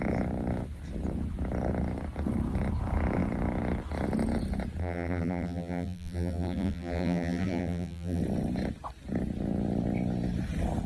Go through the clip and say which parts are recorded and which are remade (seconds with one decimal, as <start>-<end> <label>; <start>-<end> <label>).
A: 0.0-4.8 recorded; 4.8-8.2 remade; 8.2-10.9 recorded